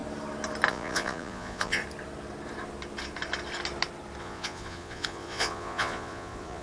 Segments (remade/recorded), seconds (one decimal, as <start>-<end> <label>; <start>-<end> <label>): 0.0-0.7 recorded; 0.7-1.8 remade; 1.8-4.2 recorded; 4.2-6.6 remade